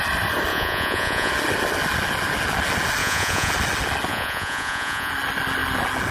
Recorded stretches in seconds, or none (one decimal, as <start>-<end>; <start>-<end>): 0.0-0.5; 1.3-3.0; 3.5-4.1; 5.1-6.1